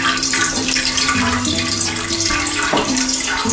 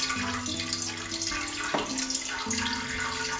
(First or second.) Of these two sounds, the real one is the second